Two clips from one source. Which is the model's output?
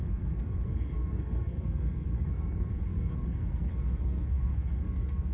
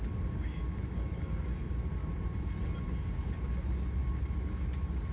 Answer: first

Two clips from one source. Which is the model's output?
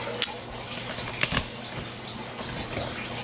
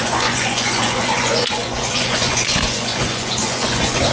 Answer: second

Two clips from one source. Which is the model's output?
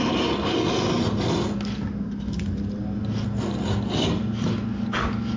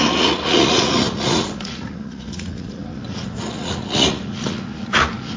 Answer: second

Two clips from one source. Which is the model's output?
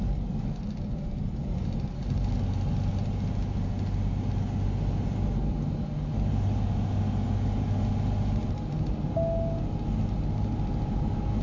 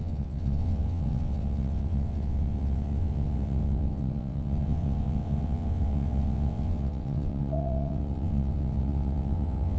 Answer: second